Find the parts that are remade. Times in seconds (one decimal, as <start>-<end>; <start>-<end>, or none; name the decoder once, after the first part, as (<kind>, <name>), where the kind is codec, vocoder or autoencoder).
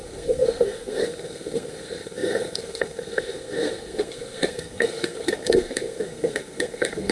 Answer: 0.0-7.1 (codec, SNAC)